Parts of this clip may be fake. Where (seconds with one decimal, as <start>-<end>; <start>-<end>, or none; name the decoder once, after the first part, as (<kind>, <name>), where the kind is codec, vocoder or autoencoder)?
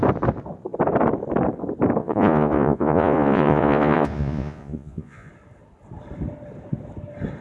2.0-5.3 (vocoder, Vocos)